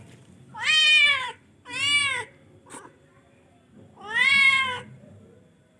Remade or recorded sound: recorded